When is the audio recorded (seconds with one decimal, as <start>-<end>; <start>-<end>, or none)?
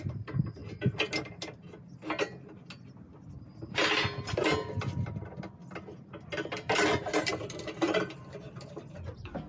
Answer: 0.0-9.5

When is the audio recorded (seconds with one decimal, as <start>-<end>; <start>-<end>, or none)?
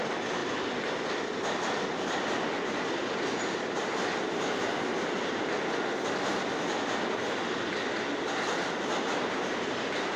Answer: 0.0-10.2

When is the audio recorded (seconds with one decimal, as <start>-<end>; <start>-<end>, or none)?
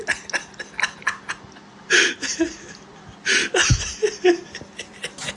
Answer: 0.0-5.4